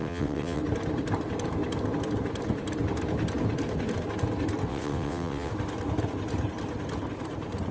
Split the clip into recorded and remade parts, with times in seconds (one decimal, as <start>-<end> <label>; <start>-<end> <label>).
0.0-0.6 remade; 0.6-4.7 recorded; 4.7-5.5 remade; 5.5-7.7 recorded